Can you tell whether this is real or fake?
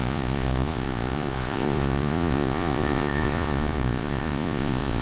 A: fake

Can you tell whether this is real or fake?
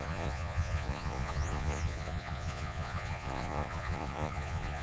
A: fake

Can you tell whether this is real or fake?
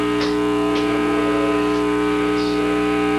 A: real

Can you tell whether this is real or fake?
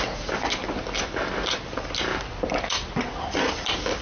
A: real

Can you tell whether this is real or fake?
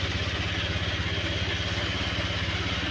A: real